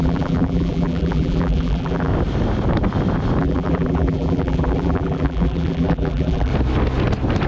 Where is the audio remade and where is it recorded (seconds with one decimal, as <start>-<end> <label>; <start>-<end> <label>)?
0.0-2.1 remade; 2.1-3.4 recorded; 3.4-6.5 remade; 6.5-7.5 recorded